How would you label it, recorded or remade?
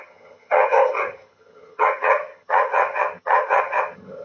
remade